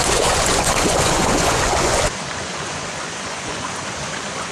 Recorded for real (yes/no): no